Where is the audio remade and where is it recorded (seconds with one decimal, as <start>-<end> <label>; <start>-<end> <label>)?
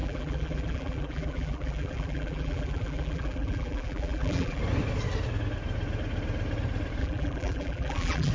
0.0-4.6 remade; 4.6-7.0 recorded; 7.0-8.3 remade